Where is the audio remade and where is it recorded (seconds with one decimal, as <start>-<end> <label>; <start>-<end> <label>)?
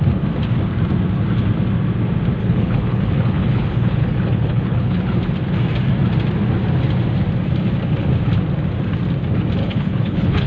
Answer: 0.0-2.4 recorded; 2.4-5.0 remade; 5.0-9.6 recorded; 9.6-10.5 remade